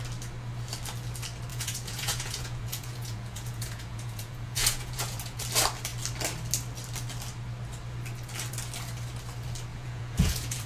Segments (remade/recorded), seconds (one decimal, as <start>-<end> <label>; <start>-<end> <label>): 0.0-1.5 recorded; 1.5-5.4 remade; 5.4-9.7 recorded; 9.7-10.7 remade